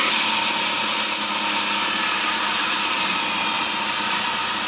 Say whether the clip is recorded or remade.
recorded